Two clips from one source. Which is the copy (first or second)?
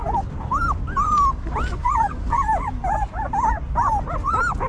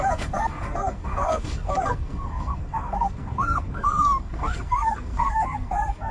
second